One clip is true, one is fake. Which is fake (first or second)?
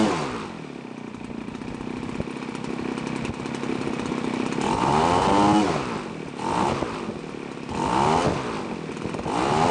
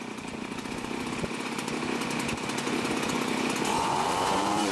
second